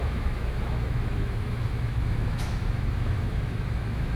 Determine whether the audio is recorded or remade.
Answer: remade